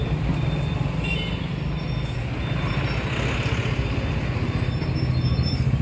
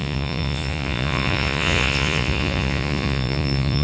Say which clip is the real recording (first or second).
first